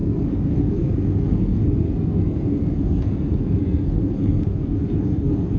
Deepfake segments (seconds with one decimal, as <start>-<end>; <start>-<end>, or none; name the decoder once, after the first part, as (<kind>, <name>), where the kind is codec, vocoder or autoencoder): 0.0-5.6 (codec, SNAC)